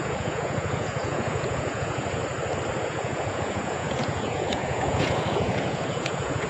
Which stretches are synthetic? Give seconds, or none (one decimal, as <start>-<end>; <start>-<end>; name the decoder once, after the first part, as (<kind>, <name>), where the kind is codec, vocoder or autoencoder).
0.0-2.2 (vocoder, Vocos); 2.8-6.5